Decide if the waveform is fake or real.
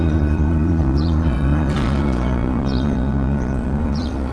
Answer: fake